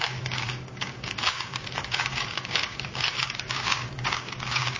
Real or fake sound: fake